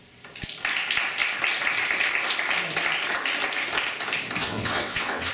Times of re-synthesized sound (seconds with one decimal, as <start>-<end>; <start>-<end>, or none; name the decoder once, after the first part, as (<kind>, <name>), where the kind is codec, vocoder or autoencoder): 4.4-5.3 (vocoder, WaveNeXt)